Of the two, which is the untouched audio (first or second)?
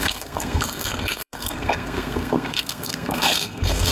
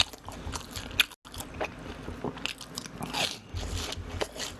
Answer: second